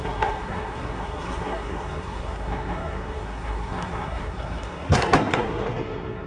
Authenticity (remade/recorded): remade